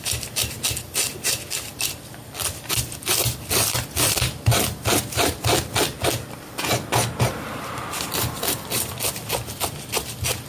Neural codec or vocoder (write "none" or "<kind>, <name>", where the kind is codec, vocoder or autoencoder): vocoder, BigVGAN v2